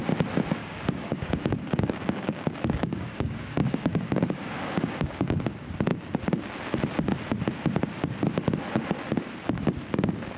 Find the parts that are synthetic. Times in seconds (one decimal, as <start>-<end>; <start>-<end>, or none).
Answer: 0.6-5.4